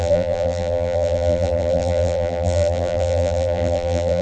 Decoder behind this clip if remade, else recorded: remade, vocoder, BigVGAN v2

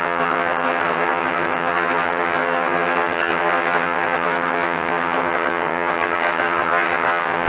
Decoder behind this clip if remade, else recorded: remade, vocoder, HiFi-GAN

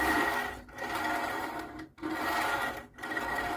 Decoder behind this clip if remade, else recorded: recorded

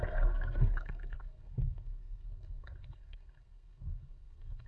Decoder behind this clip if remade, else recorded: remade, codec, SNAC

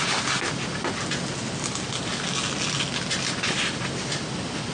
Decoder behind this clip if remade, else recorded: recorded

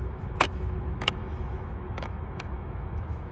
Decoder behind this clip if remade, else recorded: remade, autoencoder, DAC-VAE